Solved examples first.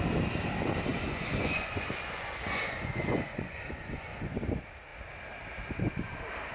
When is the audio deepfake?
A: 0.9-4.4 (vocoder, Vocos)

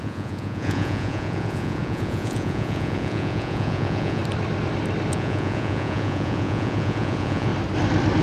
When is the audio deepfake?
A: 0.0-4.2 (vocoder, Vocos); 5.1-7.5

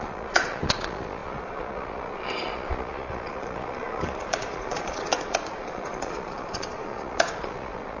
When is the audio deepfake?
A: 0.0-8.0 (vocoder, Vocos)

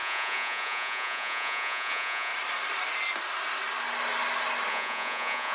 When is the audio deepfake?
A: 0.0-2.3 (vocoder, Vocos); 4.7-5.5

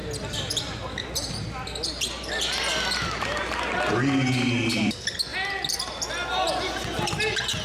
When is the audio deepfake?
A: none

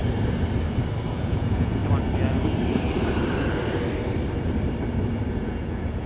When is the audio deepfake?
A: 1.1-1.8 (vocoder, Vocos); 5.3-6.1

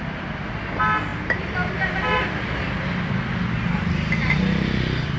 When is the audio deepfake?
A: none